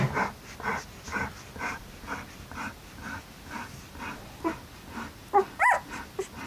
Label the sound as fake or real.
real